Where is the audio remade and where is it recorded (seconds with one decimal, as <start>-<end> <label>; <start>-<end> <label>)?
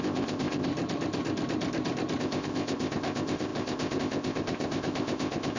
0.0-0.7 remade; 0.7-2.2 recorded; 2.2-5.6 remade